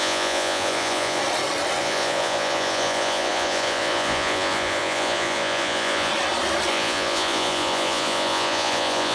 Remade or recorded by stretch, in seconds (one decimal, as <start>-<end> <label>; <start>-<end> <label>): 0.0-1.2 remade; 1.2-1.8 recorded; 1.8-6.1 remade; 6.1-6.7 recorded; 6.7-9.1 remade